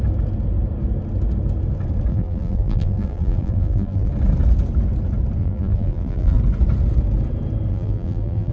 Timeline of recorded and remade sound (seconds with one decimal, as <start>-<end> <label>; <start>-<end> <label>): 0.0-2.1 recorded; 2.1-4.1 remade; 4.1-5.4 recorded; 5.4-6.4 remade; 6.4-7.7 recorded; 7.7-8.5 remade